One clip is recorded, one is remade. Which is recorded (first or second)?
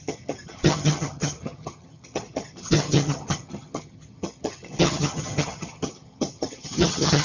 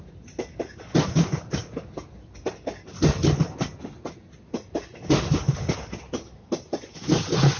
second